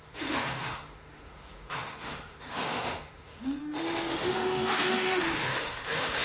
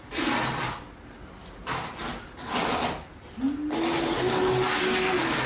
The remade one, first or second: first